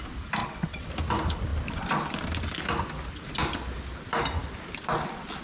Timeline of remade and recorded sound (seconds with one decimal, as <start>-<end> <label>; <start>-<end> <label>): 0.0-0.4 recorded; 0.4-0.9 remade; 0.9-5.4 recorded

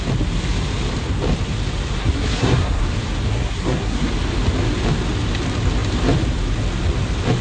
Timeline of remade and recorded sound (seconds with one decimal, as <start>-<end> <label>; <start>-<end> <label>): 0.0-2.0 recorded; 2.0-2.8 remade; 2.8-3.3 recorded; 3.3-4.1 remade; 4.1-7.4 recorded

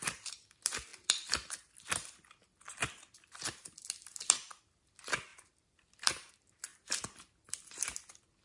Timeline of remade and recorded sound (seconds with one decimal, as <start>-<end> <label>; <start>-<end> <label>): 0.0-6.7 remade; 6.7-7.4 recorded; 7.4-8.4 remade

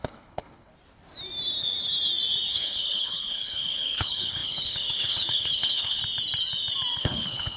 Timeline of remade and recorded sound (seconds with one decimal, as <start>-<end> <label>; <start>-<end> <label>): 0.0-0.7 remade; 0.7-2.5 recorded; 2.5-6.0 remade; 6.0-7.0 recorded; 7.0-7.6 remade

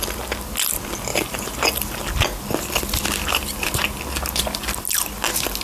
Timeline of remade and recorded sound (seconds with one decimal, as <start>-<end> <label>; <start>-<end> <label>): 0.0-1.1 recorded; 1.1-1.7 remade; 1.7-3.2 recorded; 3.2-4.0 remade; 4.0-5.6 recorded

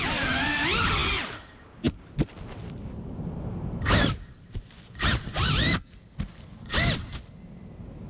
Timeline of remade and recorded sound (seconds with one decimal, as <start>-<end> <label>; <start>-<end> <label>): 0.0-8.1 recorded

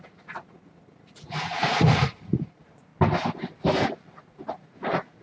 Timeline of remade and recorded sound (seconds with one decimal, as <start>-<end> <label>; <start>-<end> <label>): 0.0-2.9 remade; 2.9-4.2 recorded; 4.2-5.2 remade

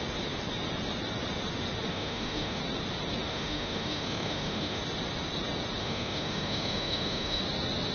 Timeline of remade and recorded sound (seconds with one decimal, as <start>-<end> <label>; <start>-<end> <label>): 0.0-1.9 recorded; 1.9-2.6 remade; 2.6-3.3 recorded; 3.3-4.8 remade; 4.8-5.8 recorded; 5.8-7.4 remade; 7.4-7.9 recorded